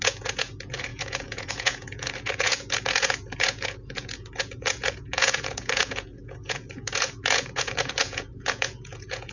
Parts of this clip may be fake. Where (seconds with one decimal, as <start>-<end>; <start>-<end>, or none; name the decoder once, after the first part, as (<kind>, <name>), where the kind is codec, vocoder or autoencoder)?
0.0-9.3 (vocoder, Vocos)